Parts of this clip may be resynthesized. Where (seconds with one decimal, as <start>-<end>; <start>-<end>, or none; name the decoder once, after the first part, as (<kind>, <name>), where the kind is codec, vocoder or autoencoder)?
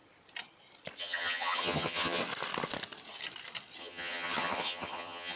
1.0-2.2 (vocoder, HiFi-GAN); 3.8-5.4